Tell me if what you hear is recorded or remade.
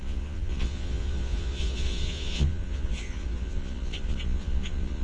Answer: remade